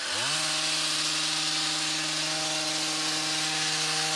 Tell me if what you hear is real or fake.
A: real